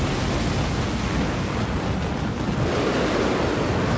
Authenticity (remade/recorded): recorded